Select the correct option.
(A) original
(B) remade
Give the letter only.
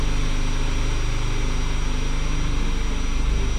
A